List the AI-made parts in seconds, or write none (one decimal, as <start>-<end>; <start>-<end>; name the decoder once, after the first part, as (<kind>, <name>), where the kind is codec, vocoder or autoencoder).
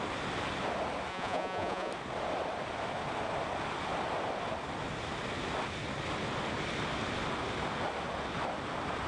1.1-1.9 (vocoder, Vocos)